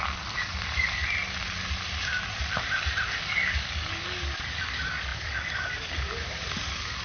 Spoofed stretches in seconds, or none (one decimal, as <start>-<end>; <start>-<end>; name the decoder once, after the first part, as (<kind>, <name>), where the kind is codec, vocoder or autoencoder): 0.0-1.0 (codec, DAC); 3.2-7.0